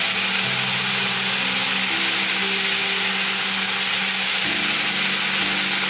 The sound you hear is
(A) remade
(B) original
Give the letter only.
B